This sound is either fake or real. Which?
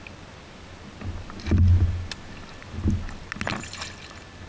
real